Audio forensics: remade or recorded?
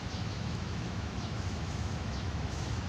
remade